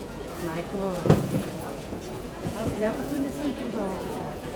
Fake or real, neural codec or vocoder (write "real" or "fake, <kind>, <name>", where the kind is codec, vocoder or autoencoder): fake, vocoder, Vocos